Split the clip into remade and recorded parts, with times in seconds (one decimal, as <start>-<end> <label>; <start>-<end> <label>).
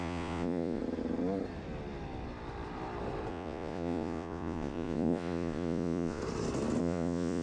0.0-0.8 remade; 0.8-3.3 recorded; 3.3-6.2 remade; 6.2-6.8 recorded; 6.8-7.4 remade